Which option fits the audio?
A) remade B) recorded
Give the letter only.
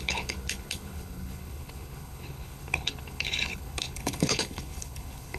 A